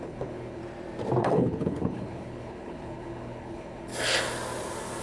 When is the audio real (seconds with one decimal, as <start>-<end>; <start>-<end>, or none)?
0.6-1.2; 3.9-5.0